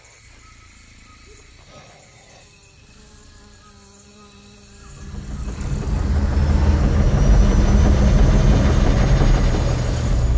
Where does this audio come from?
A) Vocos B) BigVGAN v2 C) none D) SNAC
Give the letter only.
C